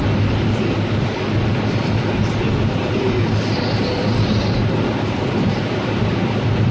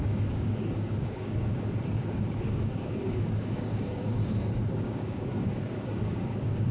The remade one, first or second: second